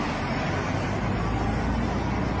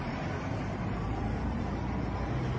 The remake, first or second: second